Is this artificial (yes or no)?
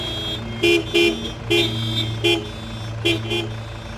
no